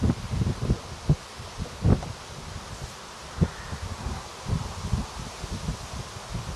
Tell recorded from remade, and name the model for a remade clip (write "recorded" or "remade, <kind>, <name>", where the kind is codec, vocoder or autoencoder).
recorded